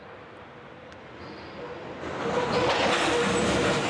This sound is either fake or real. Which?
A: real